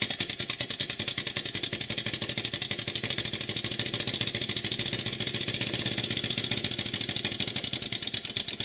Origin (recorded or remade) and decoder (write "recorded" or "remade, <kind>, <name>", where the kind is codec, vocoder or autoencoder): recorded